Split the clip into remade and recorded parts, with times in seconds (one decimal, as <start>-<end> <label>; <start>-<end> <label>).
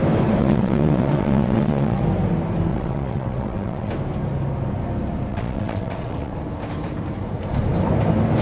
0.0-0.4 recorded; 0.4-2.0 remade; 2.0-2.7 recorded; 2.7-3.9 remade; 3.9-5.3 recorded; 5.3-6.4 remade; 6.4-8.4 recorded